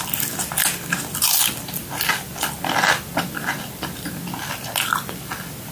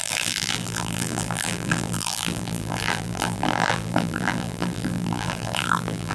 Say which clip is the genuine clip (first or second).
first